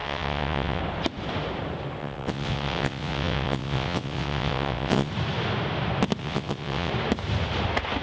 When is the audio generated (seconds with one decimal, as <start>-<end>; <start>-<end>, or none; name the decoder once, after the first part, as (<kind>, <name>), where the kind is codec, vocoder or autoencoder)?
0.0-0.8 (vocoder, WaveNeXt); 2.0-5.1; 6.2-6.9